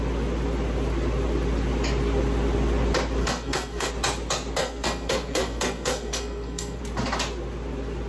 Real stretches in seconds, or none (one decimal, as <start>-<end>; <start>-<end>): 0.0-3.2; 3.9-4.6; 6.8-8.1